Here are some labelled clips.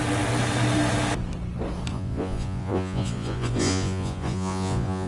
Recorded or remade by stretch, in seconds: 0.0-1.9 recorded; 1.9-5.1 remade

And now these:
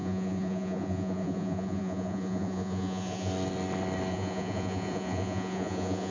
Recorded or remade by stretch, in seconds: 0.0-3.3 remade; 3.3-4.1 recorded; 4.1-6.1 remade